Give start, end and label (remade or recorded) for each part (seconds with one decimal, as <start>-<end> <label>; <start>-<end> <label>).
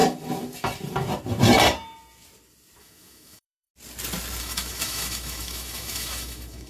0.0-2.8 recorded; 2.8-3.7 remade; 3.7-4.4 recorded; 4.4-6.7 remade